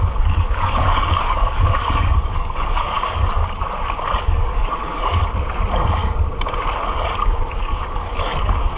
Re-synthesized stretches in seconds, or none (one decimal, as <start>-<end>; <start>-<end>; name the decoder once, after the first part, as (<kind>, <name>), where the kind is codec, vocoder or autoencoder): 0.0-3.4 (codec, DAC); 4.2-5.2; 7.5-8.8